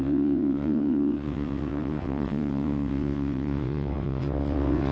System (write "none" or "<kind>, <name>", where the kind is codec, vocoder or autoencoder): vocoder, WaveNeXt